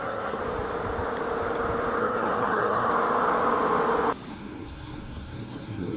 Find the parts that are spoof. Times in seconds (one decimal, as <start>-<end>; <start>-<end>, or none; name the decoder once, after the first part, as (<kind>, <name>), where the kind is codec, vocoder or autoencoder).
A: 0.0-0.4 (codec, SNAC); 2.0-2.9; 4.3-6.0